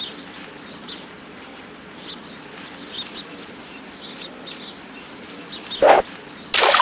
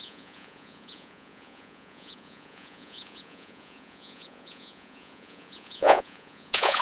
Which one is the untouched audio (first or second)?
first